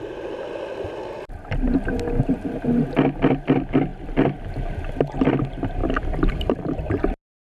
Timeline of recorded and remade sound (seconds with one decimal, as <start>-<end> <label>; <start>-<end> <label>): 0.0-3.9 recorded; 3.9-4.4 remade; 4.4-5.8 recorded; 5.8-6.3 remade; 6.3-7.5 recorded

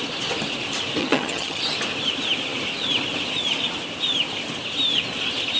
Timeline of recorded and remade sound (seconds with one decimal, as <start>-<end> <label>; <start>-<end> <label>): 0.0-1.0 recorded; 1.0-1.6 remade; 1.6-5.6 recorded

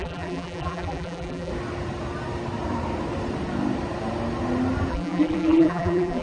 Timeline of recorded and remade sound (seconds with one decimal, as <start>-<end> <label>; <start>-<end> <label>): 0.0-1.5 remade; 1.5-4.9 recorded; 4.9-6.2 remade

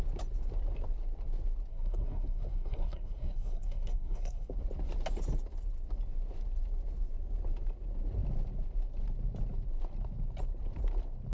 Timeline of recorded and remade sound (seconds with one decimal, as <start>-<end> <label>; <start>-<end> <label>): 0.0-1.7 recorded; 1.7-4.5 remade; 4.5-11.3 recorded

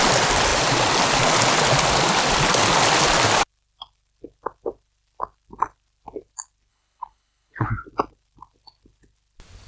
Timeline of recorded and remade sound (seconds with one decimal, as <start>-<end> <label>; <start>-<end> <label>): 0.0-6.7 recorded; 6.7-7.7 remade; 7.7-9.7 recorded

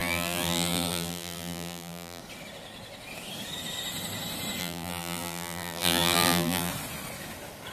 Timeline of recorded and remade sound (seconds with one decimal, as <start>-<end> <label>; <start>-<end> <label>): 0.0-2.2 remade; 2.2-4.6 recorded; 4.6-6.7 remade; 6.7-7.7 recorded

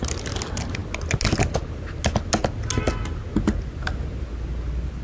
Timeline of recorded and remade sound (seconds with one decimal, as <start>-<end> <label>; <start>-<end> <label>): 0.0-5.0 recorded

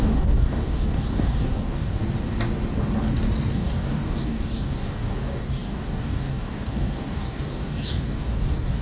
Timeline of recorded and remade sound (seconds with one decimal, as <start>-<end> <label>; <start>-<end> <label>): 0.0-2.0 remade; 2.0-3.5 recorded; 3.5-8.8 remade